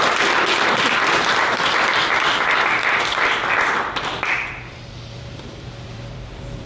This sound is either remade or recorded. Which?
remade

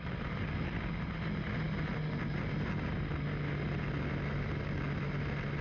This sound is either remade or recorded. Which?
recorded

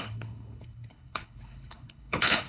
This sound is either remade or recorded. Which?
remade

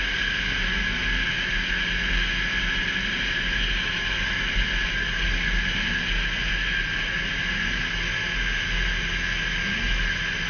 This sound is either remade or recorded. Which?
recorded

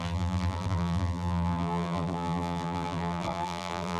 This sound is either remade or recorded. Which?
remade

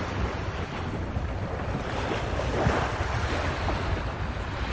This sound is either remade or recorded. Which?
recorded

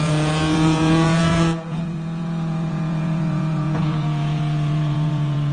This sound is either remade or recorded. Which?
remade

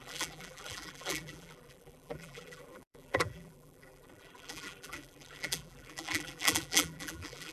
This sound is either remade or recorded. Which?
remade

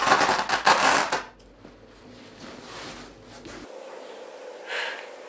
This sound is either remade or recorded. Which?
recorded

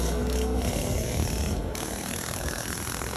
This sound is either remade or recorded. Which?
remade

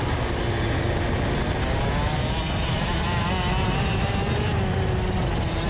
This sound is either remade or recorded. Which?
recorded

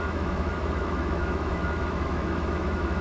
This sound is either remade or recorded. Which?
remade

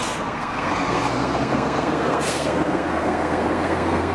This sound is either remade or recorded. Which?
remade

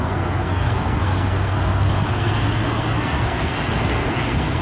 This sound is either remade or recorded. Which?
remade